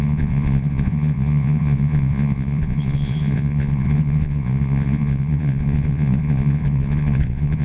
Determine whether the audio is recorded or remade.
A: remade